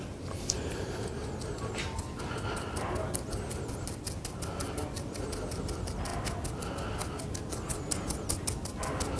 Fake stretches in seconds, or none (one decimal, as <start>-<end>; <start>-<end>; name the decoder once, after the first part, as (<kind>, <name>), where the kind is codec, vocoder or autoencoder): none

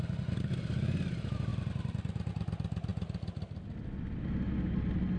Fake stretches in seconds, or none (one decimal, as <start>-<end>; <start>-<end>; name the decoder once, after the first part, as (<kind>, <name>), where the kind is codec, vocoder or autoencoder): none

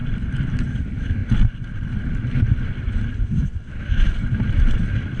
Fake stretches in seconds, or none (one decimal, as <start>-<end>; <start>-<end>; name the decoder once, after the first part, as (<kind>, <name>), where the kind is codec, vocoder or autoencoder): none

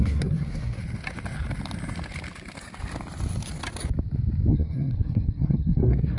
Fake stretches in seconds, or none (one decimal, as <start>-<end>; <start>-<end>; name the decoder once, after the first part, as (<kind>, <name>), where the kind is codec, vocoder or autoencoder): 0.0-0.8 (codec, SNAC); 4.5-6.2

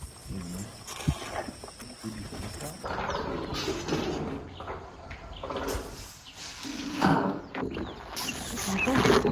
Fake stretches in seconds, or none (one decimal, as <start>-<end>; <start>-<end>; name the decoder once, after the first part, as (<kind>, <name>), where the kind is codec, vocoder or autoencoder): 6.4-7.4 (codec, SNAC)

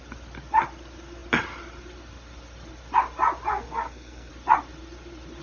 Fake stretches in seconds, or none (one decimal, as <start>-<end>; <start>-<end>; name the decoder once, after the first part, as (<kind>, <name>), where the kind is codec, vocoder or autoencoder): 3.5-4.3 (codec, SNAC)

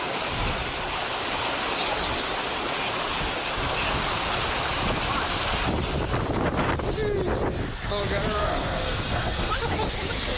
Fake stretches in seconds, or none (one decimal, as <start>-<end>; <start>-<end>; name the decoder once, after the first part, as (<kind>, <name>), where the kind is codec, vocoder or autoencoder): 8.4-9.5 (codec, SNAC)

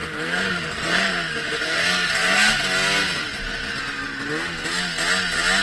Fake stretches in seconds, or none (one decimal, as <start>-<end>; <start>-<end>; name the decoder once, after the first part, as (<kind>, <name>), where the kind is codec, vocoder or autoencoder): 0.0-2.5 (codec, SNAC)